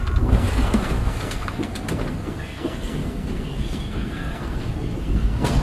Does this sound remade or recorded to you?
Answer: remade